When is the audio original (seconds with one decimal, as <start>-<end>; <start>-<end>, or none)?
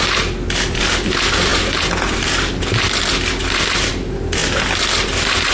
0.0-5.5